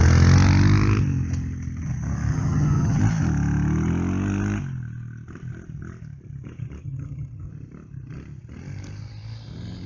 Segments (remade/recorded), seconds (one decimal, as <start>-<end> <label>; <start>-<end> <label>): 0.0-2.3 recorded; 2.3-3.0 remade; 3.0-6.8 recorded; 6.8-7.5 remade; 7.5-9.9 recorded